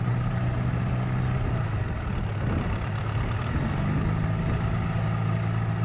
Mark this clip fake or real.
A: real